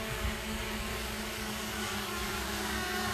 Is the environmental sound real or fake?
fake